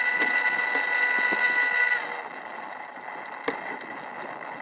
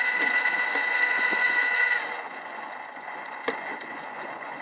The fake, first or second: second